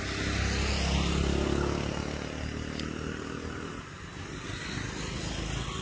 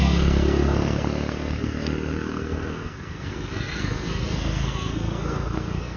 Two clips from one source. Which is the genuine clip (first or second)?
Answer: first